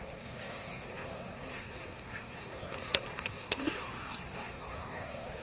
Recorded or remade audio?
remade